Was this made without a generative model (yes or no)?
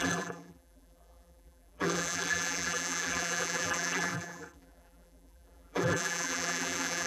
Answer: no